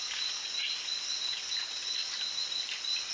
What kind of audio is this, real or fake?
real